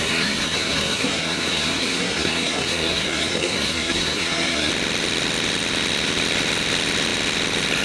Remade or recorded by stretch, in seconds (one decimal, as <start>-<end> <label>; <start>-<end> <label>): 0.0-4.7 remade; 4.7-7.8 recorded